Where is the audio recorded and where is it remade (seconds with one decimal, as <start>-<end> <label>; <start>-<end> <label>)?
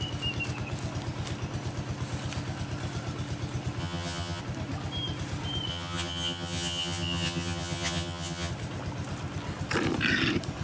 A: 0.0-3.8 recorded; 3.8-4.4 remade; 4.4-5.7 recorded; 5.7-8.5 remade; 8.5-10.6 recorded